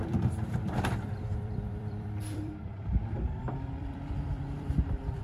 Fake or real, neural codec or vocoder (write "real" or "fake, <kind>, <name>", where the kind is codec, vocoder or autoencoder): fake, vocoder, BigVGAN v2